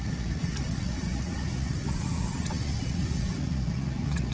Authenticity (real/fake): fake